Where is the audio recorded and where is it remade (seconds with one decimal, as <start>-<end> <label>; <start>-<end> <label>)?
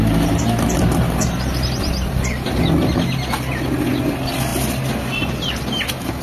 0.0-6.2 recorded